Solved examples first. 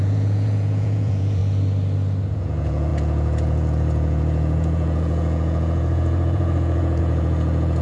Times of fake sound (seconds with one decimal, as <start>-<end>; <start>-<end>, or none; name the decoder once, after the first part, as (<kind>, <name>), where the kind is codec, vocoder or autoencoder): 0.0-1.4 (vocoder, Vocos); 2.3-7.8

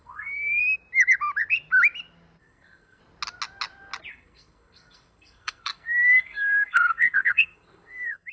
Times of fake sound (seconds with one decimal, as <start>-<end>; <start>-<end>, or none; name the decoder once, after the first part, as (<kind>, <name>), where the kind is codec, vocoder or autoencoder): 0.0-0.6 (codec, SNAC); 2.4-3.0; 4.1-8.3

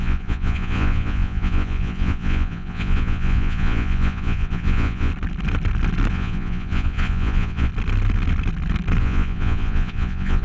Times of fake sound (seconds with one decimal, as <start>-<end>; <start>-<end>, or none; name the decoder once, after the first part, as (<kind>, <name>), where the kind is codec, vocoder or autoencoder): 0.0-5.1 (vocoder, Vocos); 6.1-7.7; 9.0-10.4

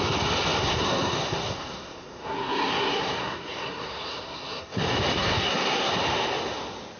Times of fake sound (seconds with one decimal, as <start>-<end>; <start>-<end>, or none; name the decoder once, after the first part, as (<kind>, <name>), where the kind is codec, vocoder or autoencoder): 0.6-4.8 (codec, SNAC); 5.2-5.9

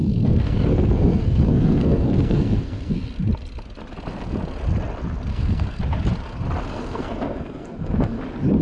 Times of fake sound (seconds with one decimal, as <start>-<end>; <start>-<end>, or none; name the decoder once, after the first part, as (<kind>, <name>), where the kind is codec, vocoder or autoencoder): 0.0-2.9 (codec, SNAC); 5.3-5.8; 6.7-8.2